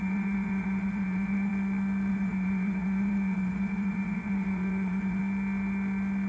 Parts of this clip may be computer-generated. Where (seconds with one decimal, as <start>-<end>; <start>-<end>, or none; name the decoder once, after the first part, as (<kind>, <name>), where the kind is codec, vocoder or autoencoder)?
0.0-1.5 (vocoder, Vocos); 2.1-5.2